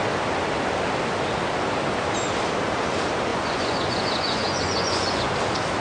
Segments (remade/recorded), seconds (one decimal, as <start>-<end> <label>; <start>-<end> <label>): 0.0-3.3 recorded; 3.3-5.3 remade; 5.3-5.8 recorded